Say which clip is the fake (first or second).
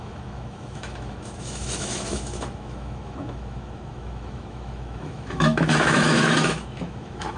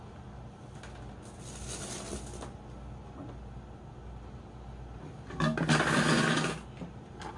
first